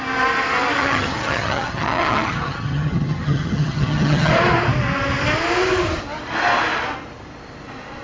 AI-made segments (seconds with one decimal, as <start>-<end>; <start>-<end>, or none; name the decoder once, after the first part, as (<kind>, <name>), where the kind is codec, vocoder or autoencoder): 0.8-4.3 (vocoder, HiFi-GAN)